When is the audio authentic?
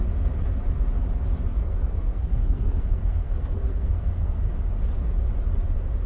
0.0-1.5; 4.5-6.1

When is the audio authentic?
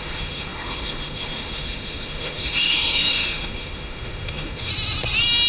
4.7-5.5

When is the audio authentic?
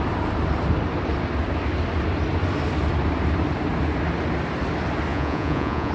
0.0-5.1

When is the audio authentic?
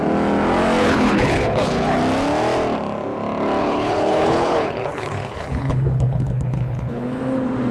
0.0-0.8; 2.0-3.6; 7.2-7.7